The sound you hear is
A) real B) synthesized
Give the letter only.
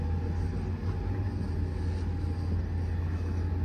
A